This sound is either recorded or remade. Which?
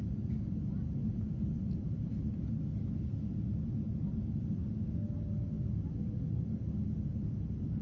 recorded